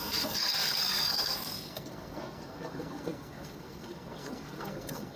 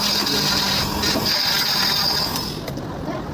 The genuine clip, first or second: second